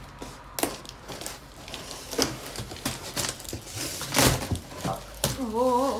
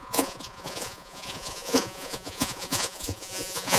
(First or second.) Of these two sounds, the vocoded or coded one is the second